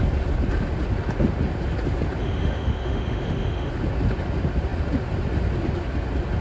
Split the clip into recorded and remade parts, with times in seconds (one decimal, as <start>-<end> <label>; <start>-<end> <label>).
0.0-2.2 recorded; 2.2-3.7 remade; 3.7-6.4 recorded

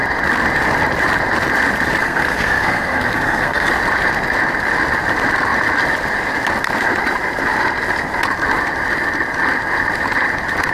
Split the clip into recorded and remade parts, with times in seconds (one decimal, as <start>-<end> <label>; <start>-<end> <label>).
0.0-2.0 recorded; 2.0-3.7 remade; 3.7-10.7 recorded